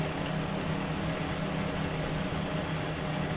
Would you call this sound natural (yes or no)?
yes